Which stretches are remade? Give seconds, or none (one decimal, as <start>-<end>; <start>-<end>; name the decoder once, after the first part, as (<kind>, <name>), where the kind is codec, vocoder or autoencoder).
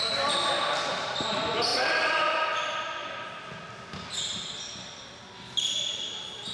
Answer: none